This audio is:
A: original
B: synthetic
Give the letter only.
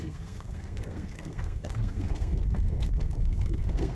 B